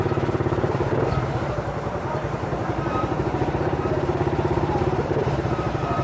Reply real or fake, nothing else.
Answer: fake